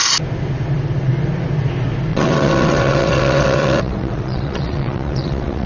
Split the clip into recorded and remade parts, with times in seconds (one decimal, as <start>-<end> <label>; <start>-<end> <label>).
0.0-2.1 recorded; 2.1-5.7 remade